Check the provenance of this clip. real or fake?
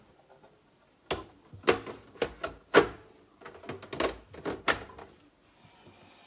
real